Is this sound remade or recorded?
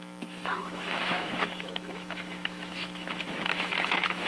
remade